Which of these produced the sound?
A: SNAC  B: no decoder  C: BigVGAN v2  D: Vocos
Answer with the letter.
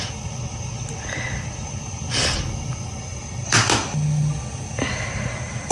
B